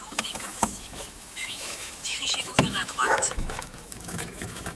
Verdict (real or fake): fake